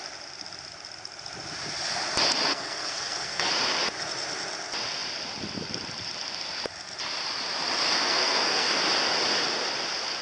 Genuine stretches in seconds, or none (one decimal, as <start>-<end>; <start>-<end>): 0.0-2.5; 3.5-8.0; 8.8-10.2